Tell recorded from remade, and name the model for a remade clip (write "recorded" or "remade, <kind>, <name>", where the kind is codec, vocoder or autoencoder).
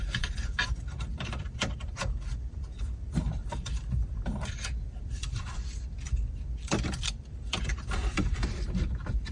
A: remade, vocoder, BigVGAN v2